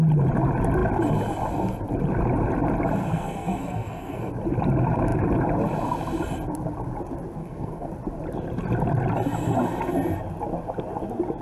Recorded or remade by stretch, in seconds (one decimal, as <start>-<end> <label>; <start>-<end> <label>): 0.0-3.0 recorded; 3.0-4.3 remade; 4.3-7.4 recorded; 7.4-7.9 remade; 7.9-11.4 recorded

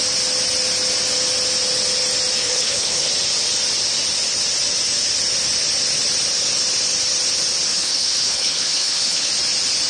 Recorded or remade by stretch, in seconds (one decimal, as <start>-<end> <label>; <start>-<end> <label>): 0.0-2.4 recorded; 2.4-3.1 remade; 3.1-7.7 recorded; 7.7-9.3 remade; 9.3-9.9 recorded

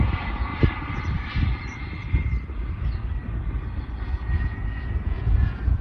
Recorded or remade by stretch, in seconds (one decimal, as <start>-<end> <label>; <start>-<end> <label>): 0.0-0.5 remade; 0.5-4.0 recorded; 4.0-5.8 remade

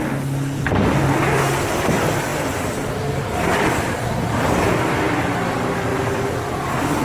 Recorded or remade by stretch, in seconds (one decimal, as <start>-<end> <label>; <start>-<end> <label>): 0.0-2.3 recorded; 2.3-5.0 remade; 5.0-7.0 recorded

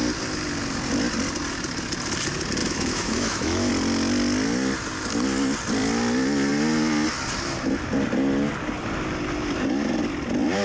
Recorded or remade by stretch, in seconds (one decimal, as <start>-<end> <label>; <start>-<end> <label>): 0.0-2.6 recorded; 2.6-3.7 remade; 3.7-10.6 recorded